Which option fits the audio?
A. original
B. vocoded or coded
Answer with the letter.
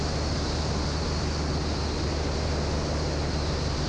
A